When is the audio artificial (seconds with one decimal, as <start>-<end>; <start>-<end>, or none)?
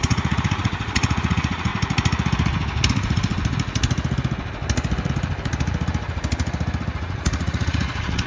0.0-1.7; 2.9-3.3; 7.0-8.3